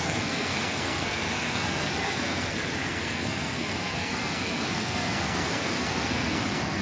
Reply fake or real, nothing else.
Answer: fake